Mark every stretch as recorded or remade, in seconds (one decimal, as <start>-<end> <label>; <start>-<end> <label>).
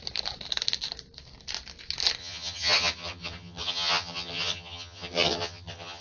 0.0-2.2 recorded; 2.2-6.0 remade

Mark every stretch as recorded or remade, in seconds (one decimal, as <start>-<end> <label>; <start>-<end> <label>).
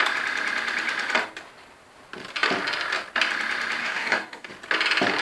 0.0-3.8 recorded; 3.8-4.5 remade; 4.5-5.2 recorded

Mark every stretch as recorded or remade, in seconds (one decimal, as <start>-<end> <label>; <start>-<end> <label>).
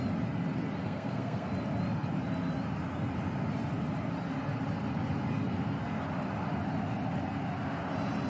0.0-0.8 recorded; 0.8-1.5 remade; 1.5-8.3 recorded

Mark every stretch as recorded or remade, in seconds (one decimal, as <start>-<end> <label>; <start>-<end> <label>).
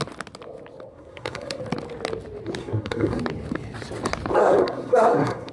0.0-0.9 recorded; 0.9-1.6 remade; 1.6-2.6 recorded; 2.6-3.2 remade; 3.2-4.4 recorded; 4.4-5.5 remade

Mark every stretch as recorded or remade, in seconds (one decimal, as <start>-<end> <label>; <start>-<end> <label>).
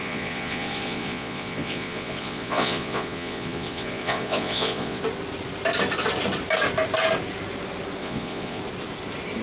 0.0-5.0 remade; 5.0-8.0 recorded; 8.0-8.6 remade; 8.6-9.4 recorded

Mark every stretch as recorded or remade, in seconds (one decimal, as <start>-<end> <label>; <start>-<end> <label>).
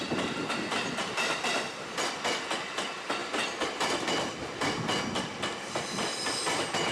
0.0-6.9 recorded